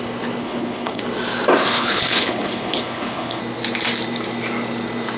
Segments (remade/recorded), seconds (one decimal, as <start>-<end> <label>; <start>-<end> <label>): 0.0-0.4 recorded; 0.4-1.0 remade; 1.0-1.6 recorded; 1.6-3.4 remade; 3.4-5.2 recorded